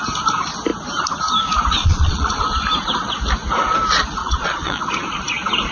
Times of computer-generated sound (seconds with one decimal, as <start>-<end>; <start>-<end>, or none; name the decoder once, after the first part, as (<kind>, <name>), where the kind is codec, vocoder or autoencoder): 1.8-2.4 (vocoder, Vocos); 4.2-4.8